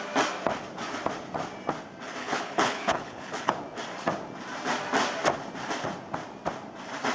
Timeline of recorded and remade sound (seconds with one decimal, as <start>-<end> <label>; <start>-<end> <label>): 0.0-2.2 recorded; 2.2-3.5 remade; 3.5-7.1 recorded

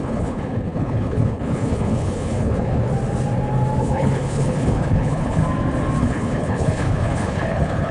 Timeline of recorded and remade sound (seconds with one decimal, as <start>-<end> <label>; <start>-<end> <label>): 0.0-2.9 remade; 2.9-3.8 recorded; 3.8-5.4 remade; 5.4-6.0 recorded; 6.0-7.9 remade

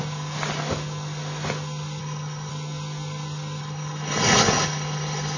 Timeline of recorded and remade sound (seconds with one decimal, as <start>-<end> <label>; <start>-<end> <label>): 0.0-2.0 recorded; 2.0-2.5 remade; 2.5-3.6 recorded; 3.6-5.4 remade

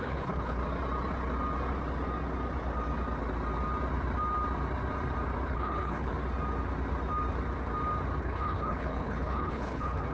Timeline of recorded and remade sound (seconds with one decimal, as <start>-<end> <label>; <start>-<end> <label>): 0.0-0.6 remade; 0.6-5.5 recorded; 5.5-6.1 remade; 6.1-8.2 recorded; 8.2-10.1 remade

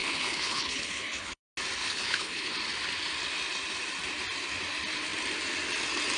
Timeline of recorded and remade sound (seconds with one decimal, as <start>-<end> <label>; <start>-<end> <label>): 0.0-1.4 remade; 1.4-1.8 recorded; 1.8-2.5 remade; 2.5-6.2 recorded

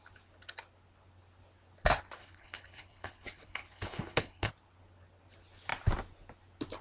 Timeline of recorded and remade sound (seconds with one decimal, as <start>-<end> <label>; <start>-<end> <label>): 0.0-2.2 recorded; 2.2-4.5 remade; 4.5-6.8 recorded